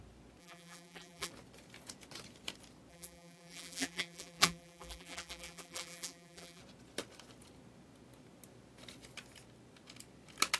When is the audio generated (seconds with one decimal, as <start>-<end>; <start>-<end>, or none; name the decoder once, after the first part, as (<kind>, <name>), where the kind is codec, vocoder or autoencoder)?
0.4-1.3 (vocoder, BigVGAN v2); 2.9-6.6